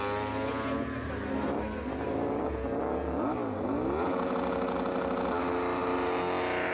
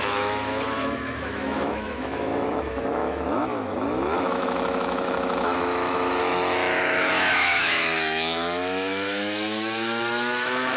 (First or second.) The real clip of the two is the first